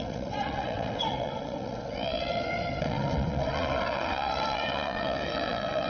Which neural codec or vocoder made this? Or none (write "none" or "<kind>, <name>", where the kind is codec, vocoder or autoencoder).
vocoder, WaveNeXt